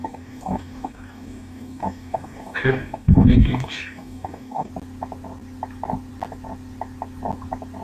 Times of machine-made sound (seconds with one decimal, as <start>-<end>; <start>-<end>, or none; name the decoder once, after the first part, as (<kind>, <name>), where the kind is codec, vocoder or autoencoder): 0.0-4.7 (codec, DAC)